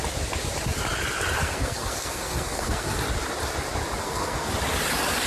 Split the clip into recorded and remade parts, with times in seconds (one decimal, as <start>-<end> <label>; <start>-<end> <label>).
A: 0.0-1.4 recorded; 1.4-3.0 remade; 3.0-4.0 recorded; 4.0-4.5 remade; 4.5-5.3 recorded